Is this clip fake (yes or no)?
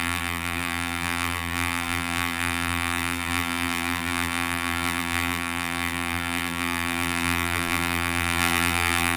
yes